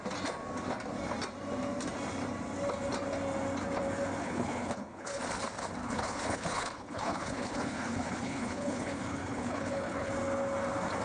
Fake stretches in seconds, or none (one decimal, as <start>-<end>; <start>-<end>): 4.2-5.2; 5.8-10.1